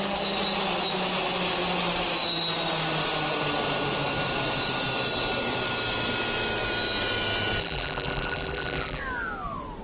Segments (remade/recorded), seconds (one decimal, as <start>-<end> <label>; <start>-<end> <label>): 0.0-7.6 recorded; 7.6-9.0 remade; 9.0-9.8 recorded

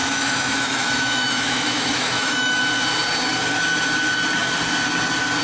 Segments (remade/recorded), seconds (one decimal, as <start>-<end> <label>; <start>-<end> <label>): 0.0-2.6 remade; 2.6-5.4 recorded

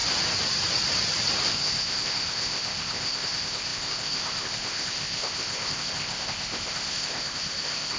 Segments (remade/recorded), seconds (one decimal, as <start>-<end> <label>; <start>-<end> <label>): 0.0-1.5 recorded; 1.5-8.0 remade

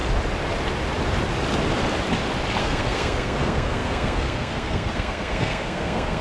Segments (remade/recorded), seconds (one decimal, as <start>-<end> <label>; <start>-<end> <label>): 0.0-2.6 recorded; 2.6-6.2 remade

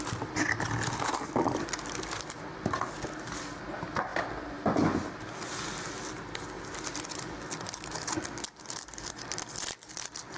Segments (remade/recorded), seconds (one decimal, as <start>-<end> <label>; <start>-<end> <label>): 0.0-8.5 recorded; 8.5-9.2 remade; 9.2-10.4 recorded

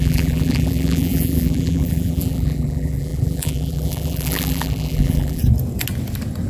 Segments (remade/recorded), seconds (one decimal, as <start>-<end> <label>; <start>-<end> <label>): 0.0-5.4 remade; 5.4-6.5 recorded

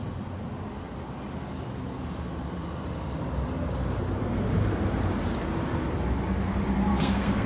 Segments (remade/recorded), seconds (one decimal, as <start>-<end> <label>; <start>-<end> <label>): 0.0-6.9 recorded; 6.9-7.5 remade